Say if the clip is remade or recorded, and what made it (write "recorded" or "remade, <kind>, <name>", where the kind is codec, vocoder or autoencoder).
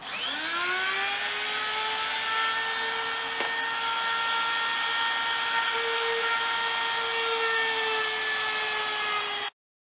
recorded